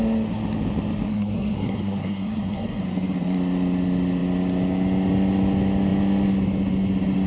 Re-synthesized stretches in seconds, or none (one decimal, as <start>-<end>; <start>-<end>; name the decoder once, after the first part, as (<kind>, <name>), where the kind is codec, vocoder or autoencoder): 1.1-2.8 (codec, SNAC)